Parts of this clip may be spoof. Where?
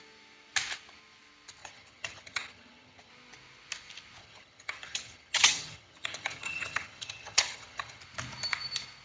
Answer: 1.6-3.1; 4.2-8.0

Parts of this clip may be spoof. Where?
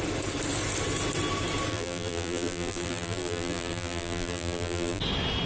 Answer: 1.7-5.0